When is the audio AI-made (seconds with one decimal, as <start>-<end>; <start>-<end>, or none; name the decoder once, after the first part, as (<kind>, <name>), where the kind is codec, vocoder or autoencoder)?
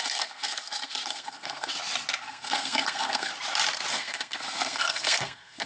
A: 0.0-1.7 (codec, SNAC); 2.2-3.3; 3.9-5.7